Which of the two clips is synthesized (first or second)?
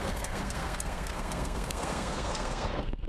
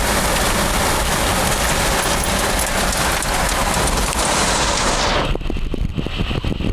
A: first